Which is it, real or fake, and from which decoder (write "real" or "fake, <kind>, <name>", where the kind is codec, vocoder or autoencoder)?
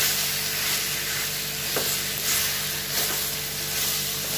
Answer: real